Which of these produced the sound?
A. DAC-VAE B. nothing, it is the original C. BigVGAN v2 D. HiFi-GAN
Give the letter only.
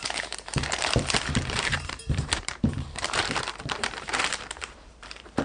C